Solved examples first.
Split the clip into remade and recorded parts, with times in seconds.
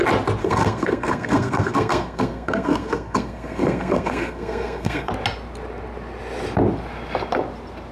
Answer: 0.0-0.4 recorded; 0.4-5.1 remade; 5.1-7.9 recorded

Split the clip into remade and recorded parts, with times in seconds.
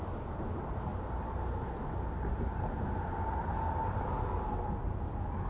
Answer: 0.0-5.5 recorded